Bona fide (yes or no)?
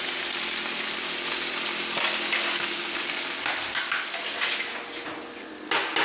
yes